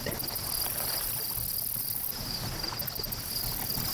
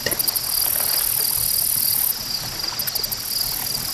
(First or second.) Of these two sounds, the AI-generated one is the first